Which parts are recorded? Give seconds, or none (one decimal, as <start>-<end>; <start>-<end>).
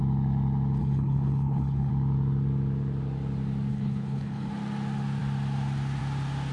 0.0-0.8; 1.9-3.7; 4.5-6.5